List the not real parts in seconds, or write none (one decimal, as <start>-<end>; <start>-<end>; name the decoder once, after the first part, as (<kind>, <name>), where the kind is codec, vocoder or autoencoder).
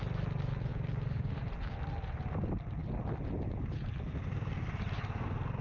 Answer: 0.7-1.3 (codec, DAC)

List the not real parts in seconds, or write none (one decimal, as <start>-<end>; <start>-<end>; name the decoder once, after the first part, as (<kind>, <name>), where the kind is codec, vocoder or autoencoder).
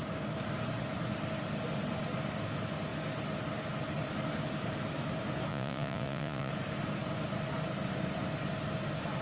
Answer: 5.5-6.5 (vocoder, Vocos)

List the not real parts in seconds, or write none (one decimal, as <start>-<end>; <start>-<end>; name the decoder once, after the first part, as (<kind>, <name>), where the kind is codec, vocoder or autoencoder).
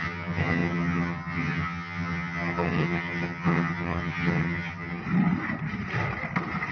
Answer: 0.0-5.0 (vocoder, HiFi-GAN)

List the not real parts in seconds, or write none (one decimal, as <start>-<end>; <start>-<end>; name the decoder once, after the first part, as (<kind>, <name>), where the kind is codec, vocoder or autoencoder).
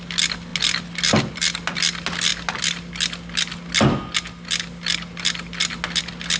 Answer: none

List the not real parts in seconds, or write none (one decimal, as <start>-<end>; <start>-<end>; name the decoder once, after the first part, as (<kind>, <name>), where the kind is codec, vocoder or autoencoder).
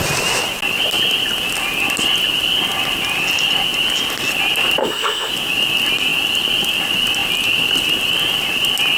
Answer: 4.8-5.3 (codec, SNAC)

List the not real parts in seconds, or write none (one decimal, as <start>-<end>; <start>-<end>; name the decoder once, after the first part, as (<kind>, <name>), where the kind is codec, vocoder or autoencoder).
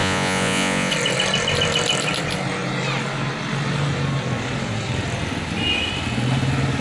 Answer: 0.0-0.9 (vocoder, Vocos)